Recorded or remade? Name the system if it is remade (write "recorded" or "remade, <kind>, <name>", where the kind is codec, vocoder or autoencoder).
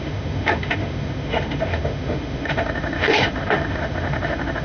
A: remade, autoencoder, DAC-VAE